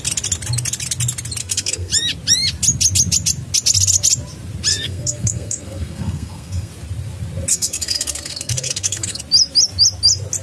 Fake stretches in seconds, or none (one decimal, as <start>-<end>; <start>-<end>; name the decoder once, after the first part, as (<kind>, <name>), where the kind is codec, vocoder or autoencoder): 1.4-1.9 (codec, SNAC); 4.7-6.7; 7.5-9.2